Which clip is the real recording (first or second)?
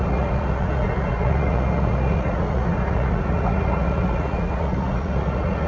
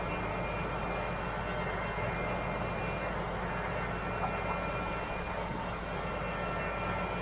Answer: second